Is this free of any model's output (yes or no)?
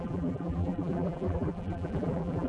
no